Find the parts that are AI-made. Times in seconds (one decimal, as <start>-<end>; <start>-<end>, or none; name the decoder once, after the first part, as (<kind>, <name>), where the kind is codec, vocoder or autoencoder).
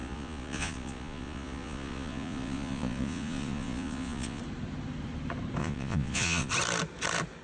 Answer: 0.0-4.4 (vocoder, Vocos); 5.6-6.5